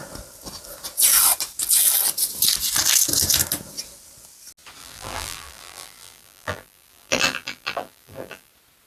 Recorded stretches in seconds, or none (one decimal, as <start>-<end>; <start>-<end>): 0.0-4.8; 8.5-8.9